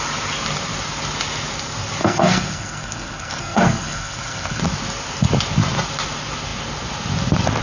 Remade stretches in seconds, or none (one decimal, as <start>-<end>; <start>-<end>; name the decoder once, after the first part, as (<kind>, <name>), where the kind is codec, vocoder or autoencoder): 2.0-4.6 (codec, SNAC)